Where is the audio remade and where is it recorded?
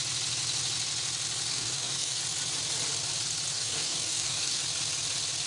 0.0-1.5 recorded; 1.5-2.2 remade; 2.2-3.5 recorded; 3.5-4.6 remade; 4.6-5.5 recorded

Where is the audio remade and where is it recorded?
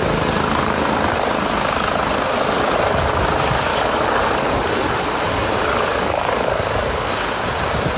0.0-3.7 recorded; 3.7-7.1 remade; 7.1-8.0 recorded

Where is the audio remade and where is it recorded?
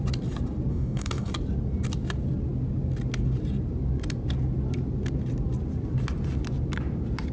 0.0-0.7 recorded; 0.7-1.3 remade; 1.3-7.3 recorded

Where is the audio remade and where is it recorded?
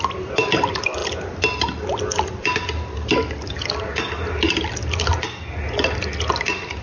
0.0-6.8 recorded